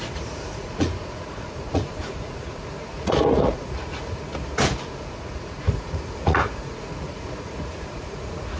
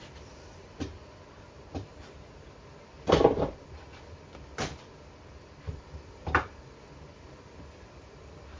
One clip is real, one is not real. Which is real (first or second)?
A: second